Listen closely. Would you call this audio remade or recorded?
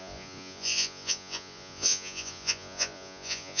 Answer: remade